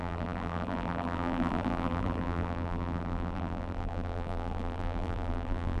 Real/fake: fake